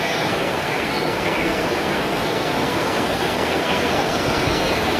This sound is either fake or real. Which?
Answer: fake